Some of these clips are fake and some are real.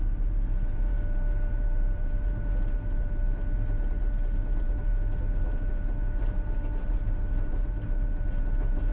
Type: fake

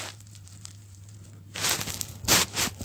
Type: fake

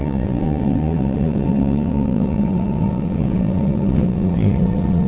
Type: fake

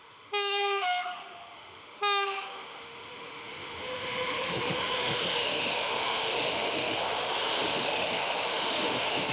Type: fake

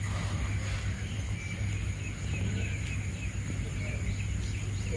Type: real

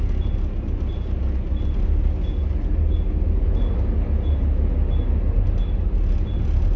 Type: real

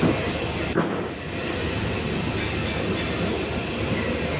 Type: real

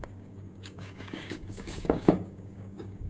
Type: fake